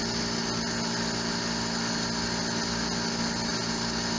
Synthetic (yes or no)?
no